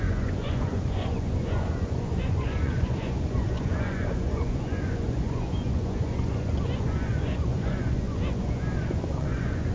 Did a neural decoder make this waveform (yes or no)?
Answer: yes